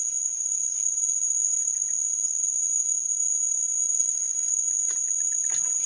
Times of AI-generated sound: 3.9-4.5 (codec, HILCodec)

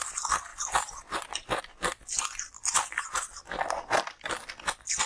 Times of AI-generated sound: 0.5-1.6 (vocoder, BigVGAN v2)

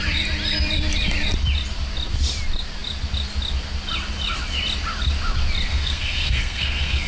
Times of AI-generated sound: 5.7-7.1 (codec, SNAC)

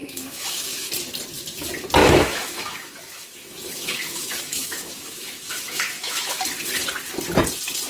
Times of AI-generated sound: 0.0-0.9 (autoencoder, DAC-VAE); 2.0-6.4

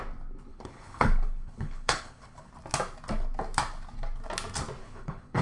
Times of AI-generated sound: 0.5-2.5 (codec, HILCodec); 4.8-5.4

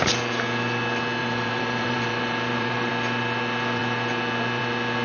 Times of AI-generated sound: 1.2-2.9 (vocoder, BigVGAN v2)